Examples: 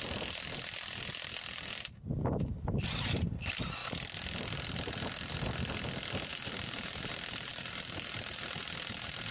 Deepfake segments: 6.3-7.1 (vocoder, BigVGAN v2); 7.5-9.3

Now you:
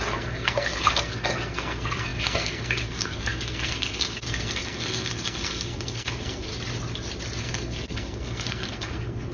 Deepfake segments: 0.0-6.5 (codec, SNAC); 7.4-9.3

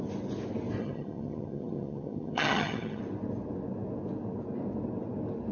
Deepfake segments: 0.8-3.0 (vocoder, HiFi-GAN)

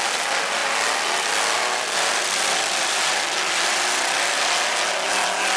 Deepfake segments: none

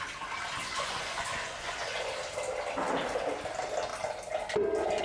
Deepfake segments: 0.6-2.1 (vocoder, Vocos)

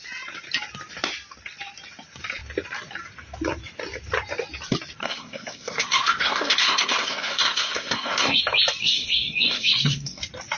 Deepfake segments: 5.0-8.4 (codec, SNAC); 8.8-10.2

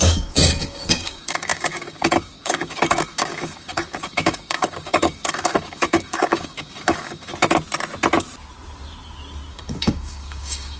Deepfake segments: 0.0-7.3 (codec, DAC); 9.5-10.8

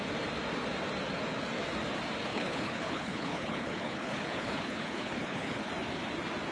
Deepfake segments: 2.3-5.7 (codec, HILCodec)